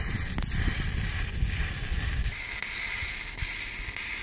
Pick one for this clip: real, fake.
real